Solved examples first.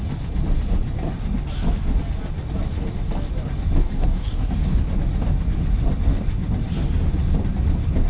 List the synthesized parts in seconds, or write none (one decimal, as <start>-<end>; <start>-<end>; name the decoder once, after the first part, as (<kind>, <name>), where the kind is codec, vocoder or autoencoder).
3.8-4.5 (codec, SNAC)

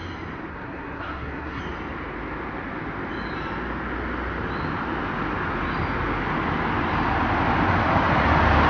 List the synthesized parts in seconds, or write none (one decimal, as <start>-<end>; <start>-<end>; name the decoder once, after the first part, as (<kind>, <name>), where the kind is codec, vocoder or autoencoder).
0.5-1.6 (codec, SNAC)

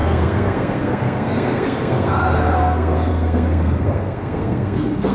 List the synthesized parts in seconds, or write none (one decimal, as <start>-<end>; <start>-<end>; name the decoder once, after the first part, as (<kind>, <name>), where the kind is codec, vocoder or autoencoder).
0.0-5.1 (codec, SNAC)

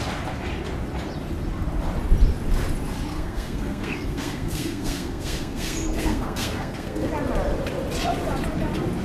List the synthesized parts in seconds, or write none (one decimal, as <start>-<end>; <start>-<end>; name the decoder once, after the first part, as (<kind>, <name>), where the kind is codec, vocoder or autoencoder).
3.1-7.1 (codec, SNAC)